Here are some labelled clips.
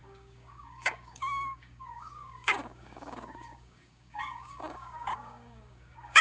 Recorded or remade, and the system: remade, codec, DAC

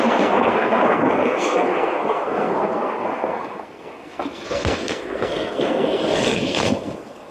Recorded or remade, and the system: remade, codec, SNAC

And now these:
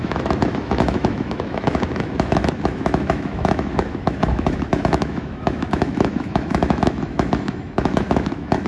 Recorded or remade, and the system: remade, autoencoder, DAC-VAE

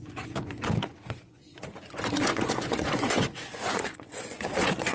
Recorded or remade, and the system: remade, vocoder, Vocos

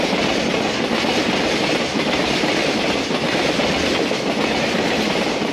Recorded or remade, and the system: recorded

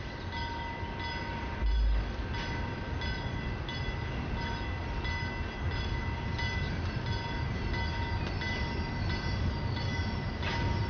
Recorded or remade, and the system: recorded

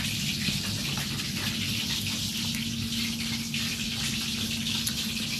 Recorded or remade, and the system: recorded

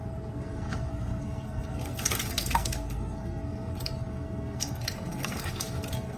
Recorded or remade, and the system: remade, codec, SNAC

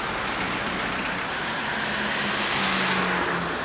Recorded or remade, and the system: recorded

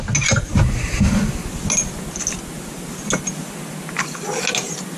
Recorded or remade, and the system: recorded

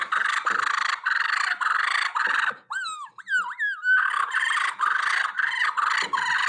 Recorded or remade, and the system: recorded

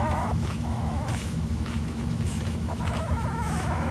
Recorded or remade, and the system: remade, autoencoder, DAC-VAE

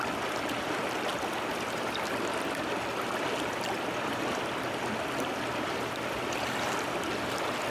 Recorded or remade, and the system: recorded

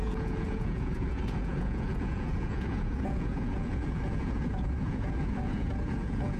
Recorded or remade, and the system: remade, vocoder, Vocos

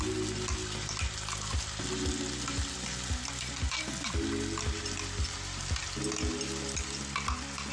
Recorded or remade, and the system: recorded